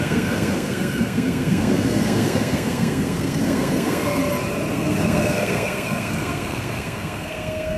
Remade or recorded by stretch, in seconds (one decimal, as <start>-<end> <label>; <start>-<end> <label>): 0.0-4.2 remade; 4.2-4.7 recorded; 4.7-7.8 remade